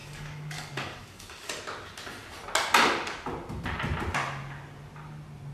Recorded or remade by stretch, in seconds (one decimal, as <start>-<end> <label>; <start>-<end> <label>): 0.0-1.5 remade; 1.5-5.5 recorded